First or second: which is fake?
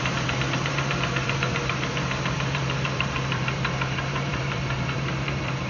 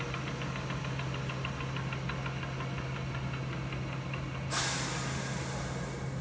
first